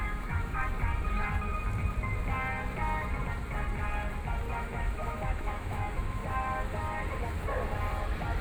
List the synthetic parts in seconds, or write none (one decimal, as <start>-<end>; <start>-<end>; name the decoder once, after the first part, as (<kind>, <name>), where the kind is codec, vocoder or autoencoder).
0.0-0.6 (autoencoder, DAC-VAE); 4.6-6.2